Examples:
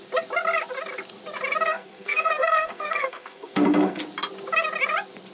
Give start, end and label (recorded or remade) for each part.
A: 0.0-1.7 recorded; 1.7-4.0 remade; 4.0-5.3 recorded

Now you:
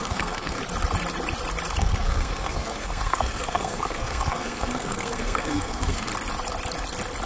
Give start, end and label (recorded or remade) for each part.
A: 0.0-0.6 remade; 0.6-1.8 recorded; 1.8-6.1 remade; 6.1-7.3 recorded

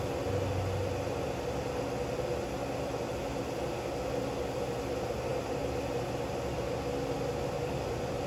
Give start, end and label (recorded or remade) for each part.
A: 0.0-8.3 recorded

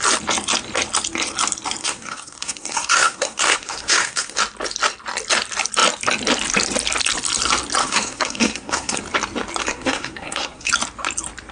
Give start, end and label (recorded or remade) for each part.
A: 0.0-1.8 recorded; 1.8-4.4 remade; 4.4-7.8 recorded; 7.8-9.0 remade; 9.0-9.6 recorded; 9.6-10.7 remade; 10.7-11.5 recorded

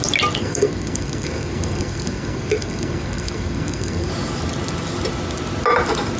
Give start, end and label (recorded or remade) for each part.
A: 0.0-0.4 recorded; 0.4-4.1 remade; 4.1-6.2 recorded

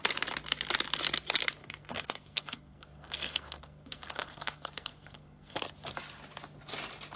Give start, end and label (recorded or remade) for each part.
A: 0.0-1.6 recorded; 1.6-5.6 remade; 5.6-7.2 recorded

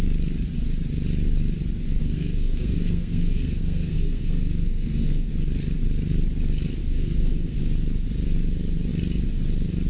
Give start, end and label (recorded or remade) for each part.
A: 0.0-2.0 recorded; 2.0-5.3 remade; 5.3-6.8 recorded; 6.8-7.6 remade; 7.6-9.9 recorded

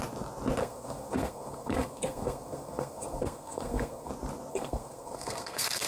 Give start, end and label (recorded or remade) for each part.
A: 0.0-0.6 recorded; 0.6-4.1 remade; 4.1-4.5 recorded; 4.5-5.9 remade